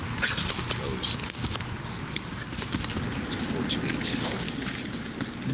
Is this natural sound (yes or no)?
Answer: yes